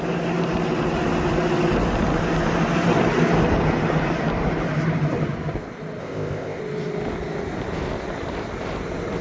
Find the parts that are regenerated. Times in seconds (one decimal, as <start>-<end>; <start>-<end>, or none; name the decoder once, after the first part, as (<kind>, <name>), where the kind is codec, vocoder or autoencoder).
6.0-6.6 (codec, ZipCodec)